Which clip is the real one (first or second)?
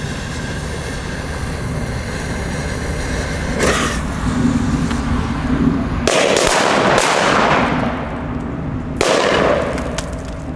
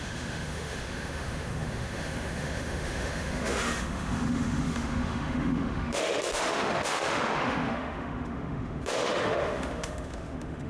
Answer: first